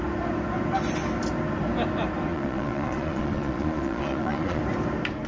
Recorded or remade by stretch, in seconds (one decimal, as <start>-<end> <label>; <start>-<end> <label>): 0.0-2.3 recorded; 2.3-4.6 remade; 4.6-5.3 recorded